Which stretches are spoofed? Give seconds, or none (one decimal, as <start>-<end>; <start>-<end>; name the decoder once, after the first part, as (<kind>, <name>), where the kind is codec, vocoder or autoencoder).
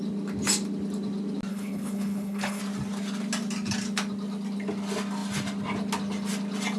1.5-2.6 (codec, HILCodec)